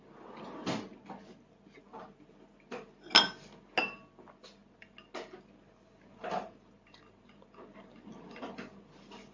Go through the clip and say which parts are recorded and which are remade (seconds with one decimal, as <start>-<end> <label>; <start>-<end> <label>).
0.0-9.3 recorded